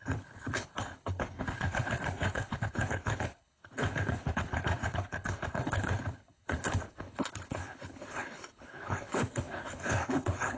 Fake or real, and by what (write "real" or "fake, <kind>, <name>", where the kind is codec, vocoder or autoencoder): fake, codec, HILCodec